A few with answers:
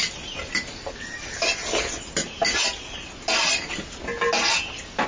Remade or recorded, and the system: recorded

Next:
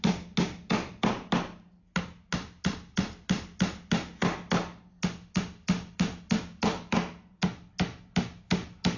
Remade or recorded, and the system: recorded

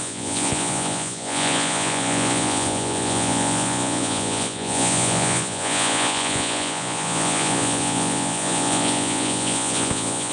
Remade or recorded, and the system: remade, vocoder, Vocos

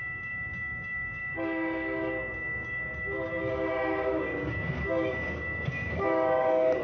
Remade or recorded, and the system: remade, codec, DAC